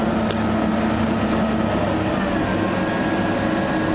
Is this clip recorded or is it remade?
recorded